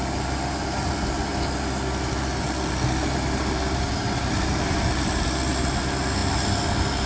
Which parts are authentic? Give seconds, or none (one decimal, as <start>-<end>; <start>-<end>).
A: 0.0-1.3; 5.5-7.1